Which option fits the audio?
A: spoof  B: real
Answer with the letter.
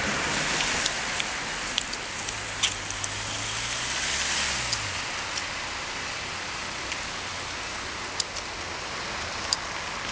B